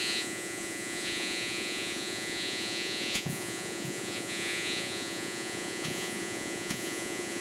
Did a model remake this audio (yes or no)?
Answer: yes